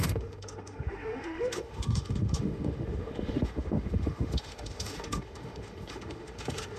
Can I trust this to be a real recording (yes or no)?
no